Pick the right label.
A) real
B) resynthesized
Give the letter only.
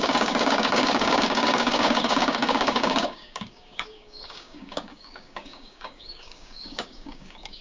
B